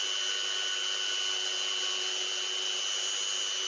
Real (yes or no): yes